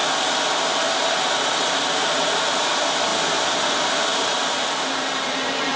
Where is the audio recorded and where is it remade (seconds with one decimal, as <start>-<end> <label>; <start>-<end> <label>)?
0.0-1.4 recorded; 1.4-3.1 remade; 3.1-3.9 recorded; 3.9-5.8 remade